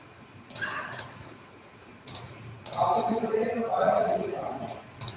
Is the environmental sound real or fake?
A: fake